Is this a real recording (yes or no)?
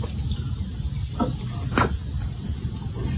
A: yes